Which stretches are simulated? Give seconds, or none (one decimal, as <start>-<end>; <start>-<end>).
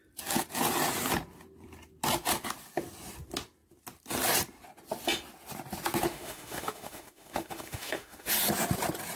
6.1-8.3